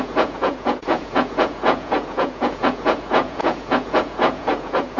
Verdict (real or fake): fake